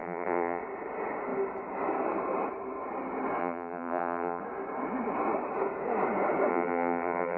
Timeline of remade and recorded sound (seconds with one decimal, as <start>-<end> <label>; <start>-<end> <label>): 0.0-0.6 remade; 0.6-3.4 recorded; 3.4-4.4 remade; 4.4-6.5 recorded; 6.5-7.4 remade